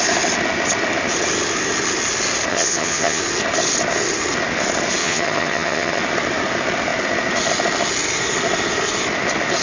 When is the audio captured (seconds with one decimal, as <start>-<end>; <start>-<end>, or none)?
0.0-2.5; 3.2-5.0; 6.0-9.6